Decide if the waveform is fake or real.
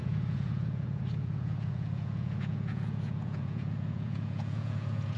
fake